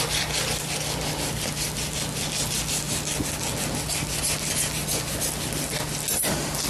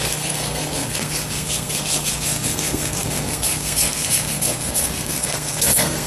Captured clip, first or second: first